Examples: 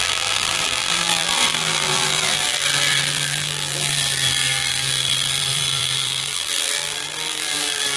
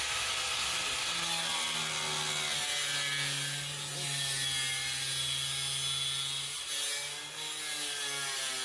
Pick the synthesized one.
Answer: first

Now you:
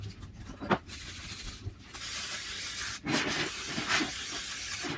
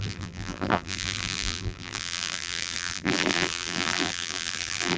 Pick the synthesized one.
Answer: second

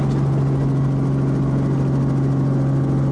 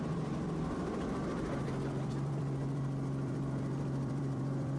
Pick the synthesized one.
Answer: second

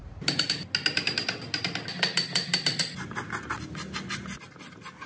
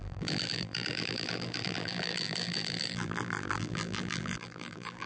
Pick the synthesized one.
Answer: second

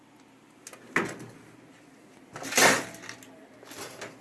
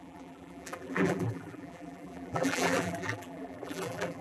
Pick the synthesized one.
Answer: second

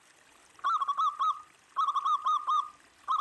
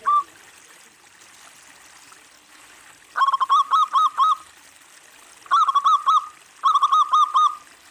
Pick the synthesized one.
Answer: first